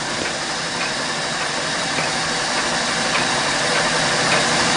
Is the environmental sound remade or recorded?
recorded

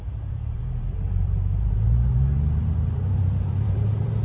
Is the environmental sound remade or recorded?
remade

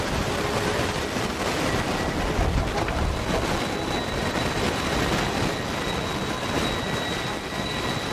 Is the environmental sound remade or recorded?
recorded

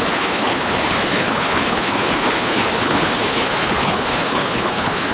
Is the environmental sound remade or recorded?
remade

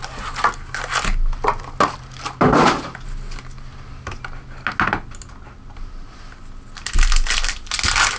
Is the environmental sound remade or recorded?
recorded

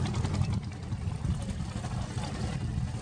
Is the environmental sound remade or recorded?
recorded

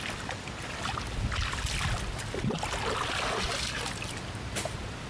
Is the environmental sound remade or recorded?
recorded